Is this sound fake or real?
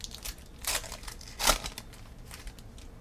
real